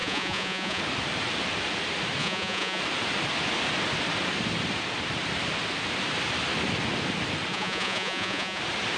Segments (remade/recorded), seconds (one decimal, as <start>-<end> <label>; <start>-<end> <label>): 0.0-0.8 remade; 0.8-2.2 recorded; 2.2-2.8 remade; 2.8-7.5 recorded; 7.5-8.6 remade; 8.6-9.0 recorded